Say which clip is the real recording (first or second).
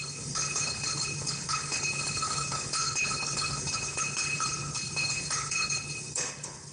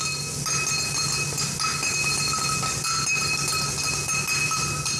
second